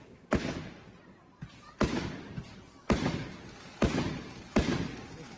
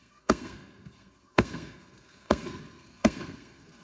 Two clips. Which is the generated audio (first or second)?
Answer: second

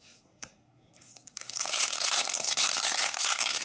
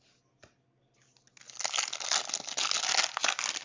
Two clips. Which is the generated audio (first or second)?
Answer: first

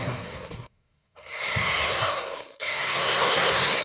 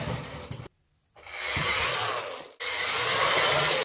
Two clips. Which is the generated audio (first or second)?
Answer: first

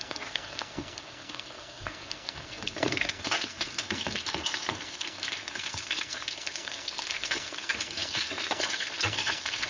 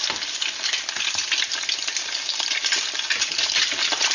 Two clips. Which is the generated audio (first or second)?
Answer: first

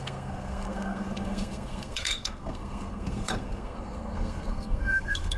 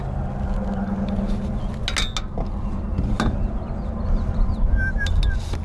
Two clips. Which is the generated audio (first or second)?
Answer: first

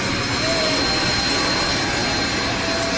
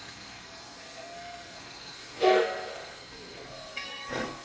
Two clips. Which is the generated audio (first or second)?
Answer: second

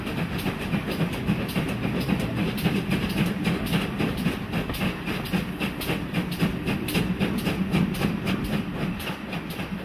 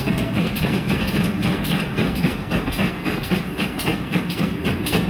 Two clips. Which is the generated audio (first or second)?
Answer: second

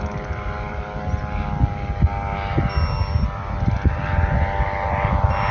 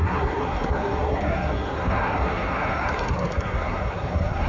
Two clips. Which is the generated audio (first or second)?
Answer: second